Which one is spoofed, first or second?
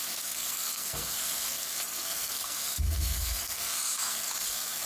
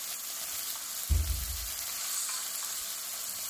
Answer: first